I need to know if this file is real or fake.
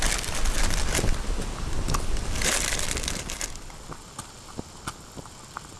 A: real